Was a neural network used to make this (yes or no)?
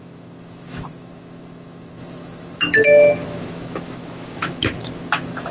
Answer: yes